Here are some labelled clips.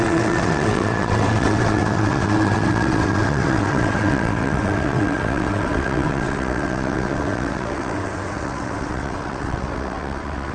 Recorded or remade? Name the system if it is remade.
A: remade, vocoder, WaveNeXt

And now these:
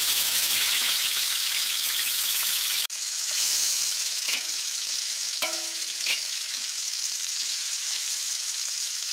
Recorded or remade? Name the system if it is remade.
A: remade, autoencoder, DAC-VAE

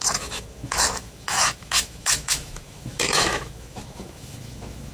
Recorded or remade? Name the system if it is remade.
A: remade, autoencoder, DAC-VAE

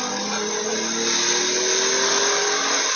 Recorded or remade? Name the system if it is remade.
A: recorded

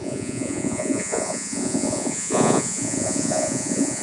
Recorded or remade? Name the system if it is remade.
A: remade, vocoder, Vocos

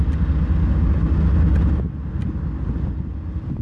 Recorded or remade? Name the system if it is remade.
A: recorded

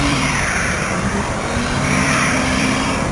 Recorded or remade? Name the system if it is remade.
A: remade, vocoder, BigVGAN v2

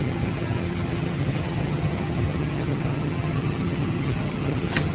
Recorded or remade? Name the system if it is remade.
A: remade, vocoder, HiFi-GAN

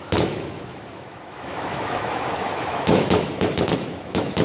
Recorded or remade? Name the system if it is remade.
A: remade, autoencoder, DAC-VAE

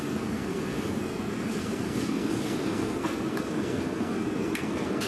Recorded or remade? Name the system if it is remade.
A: remade, codec, SNAC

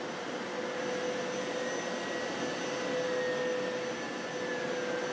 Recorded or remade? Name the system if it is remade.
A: recorded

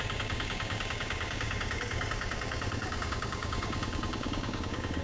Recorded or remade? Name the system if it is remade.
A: remade, codec, DAC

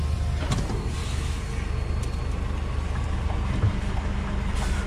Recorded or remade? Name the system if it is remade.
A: recorded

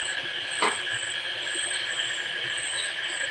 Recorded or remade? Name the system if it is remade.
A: recorded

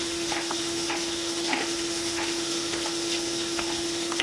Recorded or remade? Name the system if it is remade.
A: remade, autoencoder, DAC-VAE